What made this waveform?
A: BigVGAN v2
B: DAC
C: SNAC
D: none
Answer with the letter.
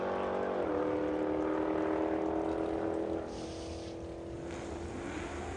D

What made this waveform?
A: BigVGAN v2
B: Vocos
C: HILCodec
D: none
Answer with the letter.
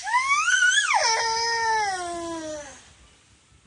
D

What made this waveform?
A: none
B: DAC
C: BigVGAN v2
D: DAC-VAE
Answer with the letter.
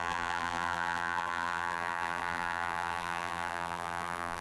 C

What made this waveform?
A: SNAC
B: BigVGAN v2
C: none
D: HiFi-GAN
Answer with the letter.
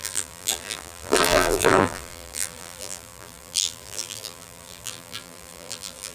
B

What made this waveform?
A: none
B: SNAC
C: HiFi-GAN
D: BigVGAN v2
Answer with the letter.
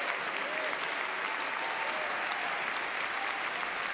A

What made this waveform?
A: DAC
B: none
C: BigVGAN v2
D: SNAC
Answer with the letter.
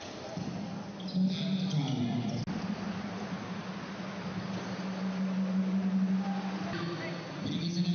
B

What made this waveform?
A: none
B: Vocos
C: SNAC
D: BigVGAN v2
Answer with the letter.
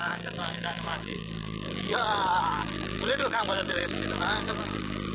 D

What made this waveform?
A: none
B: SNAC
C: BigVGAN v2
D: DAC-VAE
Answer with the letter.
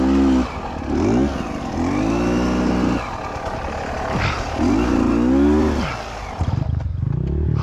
A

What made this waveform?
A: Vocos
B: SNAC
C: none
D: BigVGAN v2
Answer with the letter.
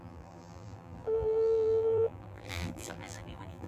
D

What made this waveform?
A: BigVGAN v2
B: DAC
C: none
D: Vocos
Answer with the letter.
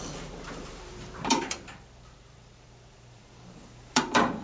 A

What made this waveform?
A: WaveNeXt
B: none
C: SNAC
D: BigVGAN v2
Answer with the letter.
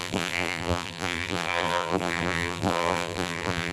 D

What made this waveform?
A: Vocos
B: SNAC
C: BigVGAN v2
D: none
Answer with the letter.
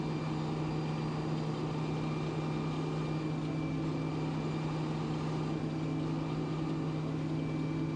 D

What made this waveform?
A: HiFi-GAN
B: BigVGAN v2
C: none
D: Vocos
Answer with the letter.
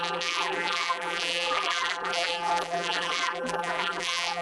B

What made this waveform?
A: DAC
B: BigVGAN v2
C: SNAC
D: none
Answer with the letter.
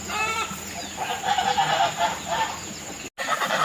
D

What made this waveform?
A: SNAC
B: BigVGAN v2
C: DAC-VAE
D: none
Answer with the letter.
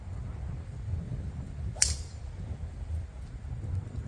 D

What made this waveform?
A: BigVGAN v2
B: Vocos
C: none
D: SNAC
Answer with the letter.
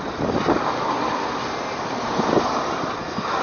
C